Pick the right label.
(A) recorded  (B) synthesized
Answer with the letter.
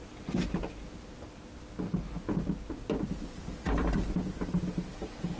A